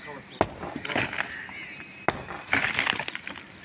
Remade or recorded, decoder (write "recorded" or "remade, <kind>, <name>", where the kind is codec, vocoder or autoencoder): recorded